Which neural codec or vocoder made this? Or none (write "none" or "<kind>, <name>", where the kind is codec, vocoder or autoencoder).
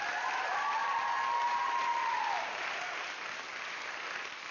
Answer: vocoder, BigVGAN v2